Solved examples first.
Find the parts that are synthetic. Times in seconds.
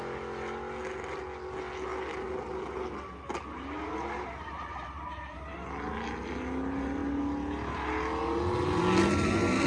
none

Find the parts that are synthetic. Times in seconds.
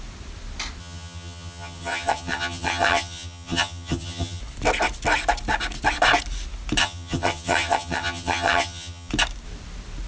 0.8-4.4 (vocoder, HiFi-GAN); 6.8-9.1